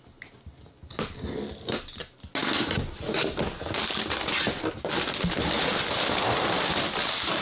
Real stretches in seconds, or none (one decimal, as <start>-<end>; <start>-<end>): 0.0-7.4